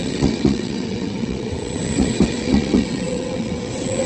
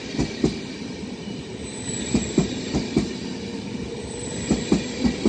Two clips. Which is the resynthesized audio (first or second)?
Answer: first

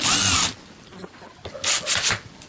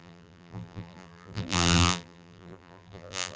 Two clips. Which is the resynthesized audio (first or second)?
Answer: second